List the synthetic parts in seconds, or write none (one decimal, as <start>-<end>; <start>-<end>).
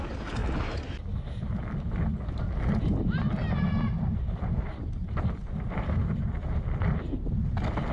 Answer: 3.4-6.3